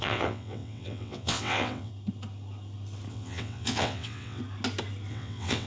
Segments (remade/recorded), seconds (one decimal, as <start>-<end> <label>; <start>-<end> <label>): 0.0-1.9 remade; 1.9-3.1 recorded; 3.1-4.4 remade; 4.4-5.1 recorded; 5.1-5.7 remade